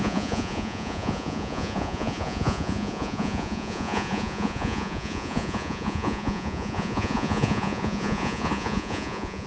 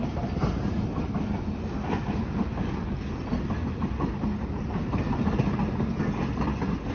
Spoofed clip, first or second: first